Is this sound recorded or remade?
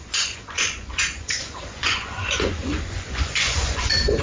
remade